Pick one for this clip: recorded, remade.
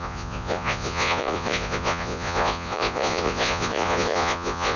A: remade